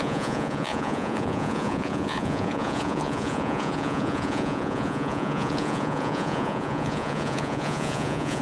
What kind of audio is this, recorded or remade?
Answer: remade